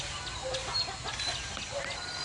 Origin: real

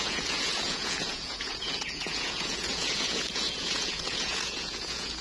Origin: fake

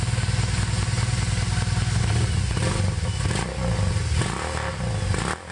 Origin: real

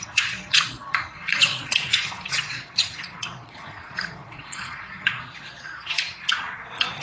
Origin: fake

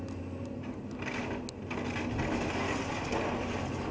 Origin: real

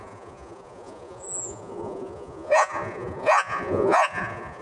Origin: fake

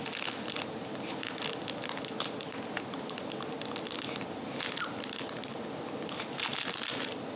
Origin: real